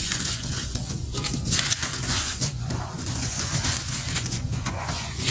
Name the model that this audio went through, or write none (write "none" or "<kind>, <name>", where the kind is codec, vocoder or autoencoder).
vocoder, Vocos